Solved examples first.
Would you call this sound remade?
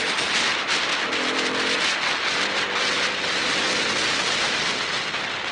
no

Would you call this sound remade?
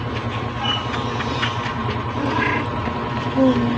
no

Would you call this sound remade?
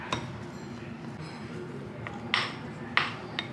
no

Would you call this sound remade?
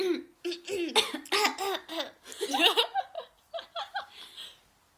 no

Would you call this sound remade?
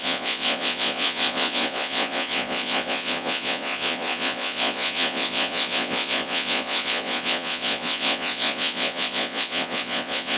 yes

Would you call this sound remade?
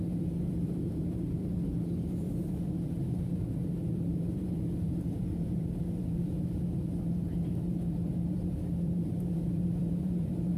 yes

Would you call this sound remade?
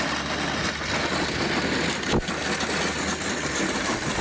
no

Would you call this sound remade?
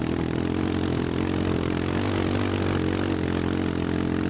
no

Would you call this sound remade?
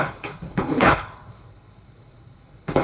yes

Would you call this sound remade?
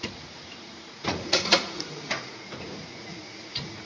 yes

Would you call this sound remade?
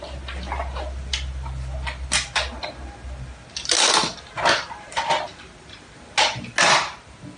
no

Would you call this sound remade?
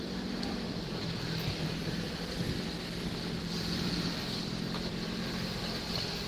yes